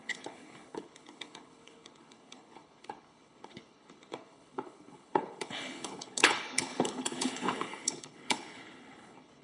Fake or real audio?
fake